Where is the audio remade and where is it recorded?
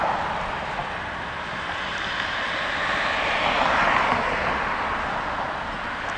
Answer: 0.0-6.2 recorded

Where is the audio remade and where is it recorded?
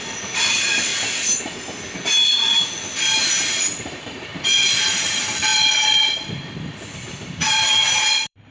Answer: 0.0-0.9 remade; 0.9-3.9 recorded; 3.9-4.3 remade; 4.3-4.9 recorded; 4.9-8.5 remade